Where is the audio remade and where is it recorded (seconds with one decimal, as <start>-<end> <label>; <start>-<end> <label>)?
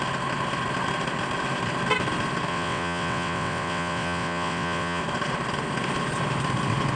0.0-2.5 recorded; 2.5-5.0 remade; 5.0-7.0 recorded